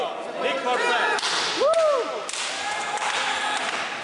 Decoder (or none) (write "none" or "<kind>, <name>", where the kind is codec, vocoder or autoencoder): none